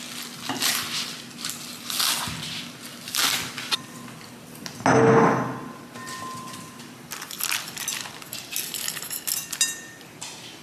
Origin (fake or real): real